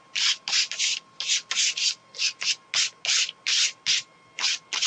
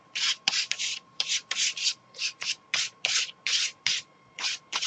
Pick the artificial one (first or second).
second